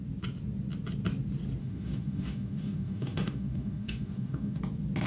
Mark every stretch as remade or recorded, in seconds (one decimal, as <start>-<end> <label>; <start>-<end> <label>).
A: 0.0-1.6 recorded; 1.6-4.6 remade; 4.6-5.1 recorded